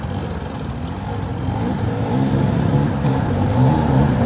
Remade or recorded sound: recorded